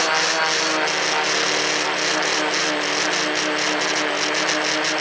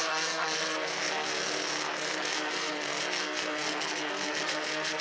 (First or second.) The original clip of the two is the first